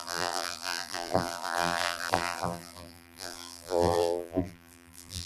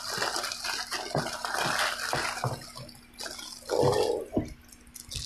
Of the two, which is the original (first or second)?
second